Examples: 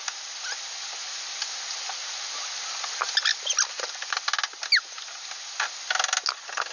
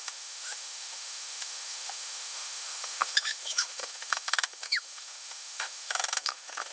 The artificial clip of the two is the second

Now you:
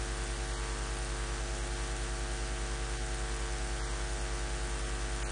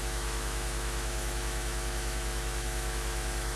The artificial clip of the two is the second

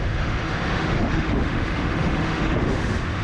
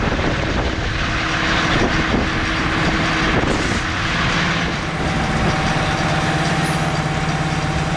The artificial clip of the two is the first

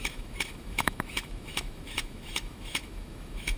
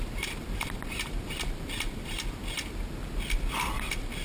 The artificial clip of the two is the first